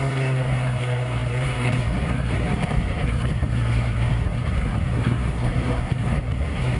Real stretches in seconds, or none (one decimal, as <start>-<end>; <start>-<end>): none